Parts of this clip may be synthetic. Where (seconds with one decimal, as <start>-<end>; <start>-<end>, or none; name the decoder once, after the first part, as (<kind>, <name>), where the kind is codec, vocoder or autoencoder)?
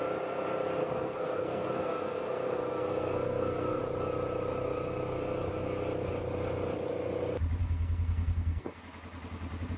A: 0.8-3.8 (codec, SNAC); 7.6-8.8